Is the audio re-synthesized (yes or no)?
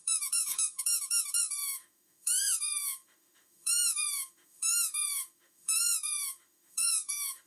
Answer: yes